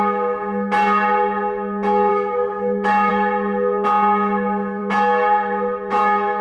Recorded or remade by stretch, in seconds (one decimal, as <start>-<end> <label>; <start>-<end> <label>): 0.0-2.1 recorded; 2.1-3.1 remade; 3.1-6.4 recorded